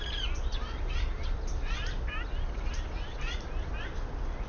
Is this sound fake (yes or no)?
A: no